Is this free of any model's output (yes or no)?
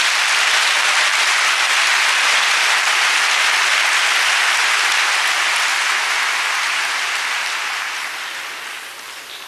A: yes